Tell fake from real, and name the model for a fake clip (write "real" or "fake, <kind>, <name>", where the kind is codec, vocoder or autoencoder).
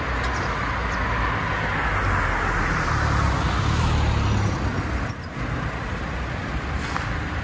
real